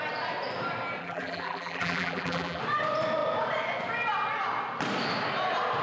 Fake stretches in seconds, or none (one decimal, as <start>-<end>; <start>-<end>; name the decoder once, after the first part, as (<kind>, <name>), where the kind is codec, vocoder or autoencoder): 1.0-2.6 (vocoder, BigVGAN v2)